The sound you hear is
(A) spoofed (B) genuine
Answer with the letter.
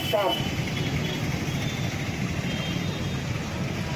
B